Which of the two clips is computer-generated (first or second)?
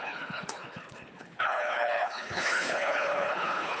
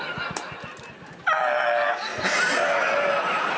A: first